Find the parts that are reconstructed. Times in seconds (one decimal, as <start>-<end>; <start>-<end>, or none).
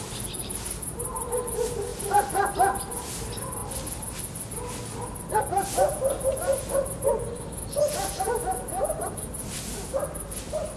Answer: 0.4-1.4